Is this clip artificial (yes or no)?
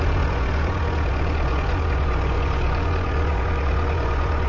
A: yes